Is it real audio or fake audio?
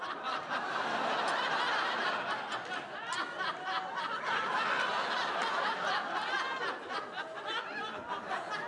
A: real